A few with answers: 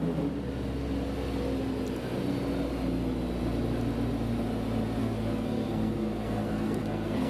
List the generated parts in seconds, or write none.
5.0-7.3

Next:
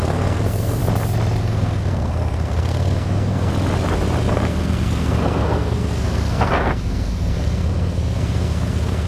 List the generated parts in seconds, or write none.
0.0-0.8; 1.4-3.5; 4.3-9.1

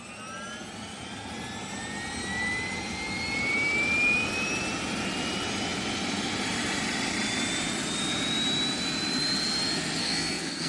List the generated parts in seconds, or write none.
10.0-10.7

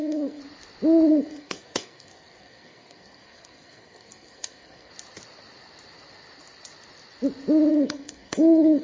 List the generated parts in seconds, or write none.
0.0-0.4; 1.1-4.9; 7.7-8.8

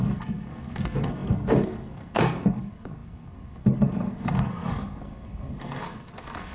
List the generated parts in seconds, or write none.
0.0-6.5

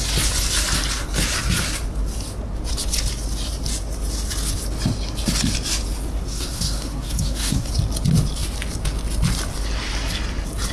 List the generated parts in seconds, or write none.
6.3-7.7

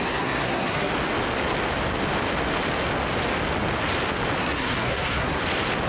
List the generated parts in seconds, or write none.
0.0-0.9; 4.4-5.4